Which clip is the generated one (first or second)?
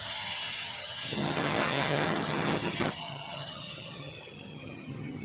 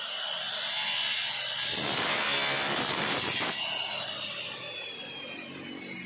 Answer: first